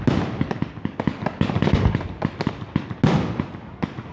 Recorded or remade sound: recorded